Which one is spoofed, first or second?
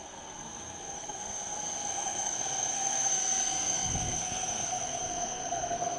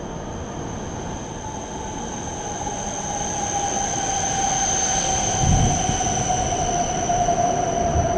first